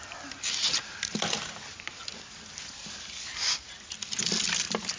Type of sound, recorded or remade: recorded